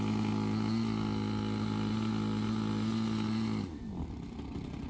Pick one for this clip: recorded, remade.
recorded